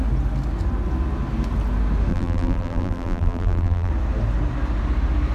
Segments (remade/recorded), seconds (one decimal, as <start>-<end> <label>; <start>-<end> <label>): 0.0-2.1 recorded; 2.1-3.9 remade; 3.9-5.3 recorded